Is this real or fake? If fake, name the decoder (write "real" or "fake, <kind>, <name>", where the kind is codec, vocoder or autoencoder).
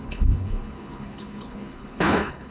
fake, codec, HILCodec